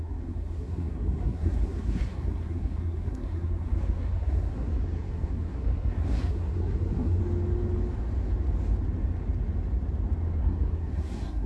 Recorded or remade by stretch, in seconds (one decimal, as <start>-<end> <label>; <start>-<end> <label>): 0.0-7.2 remade; 7.2-10.4 recorded; 10.4-11.5 remade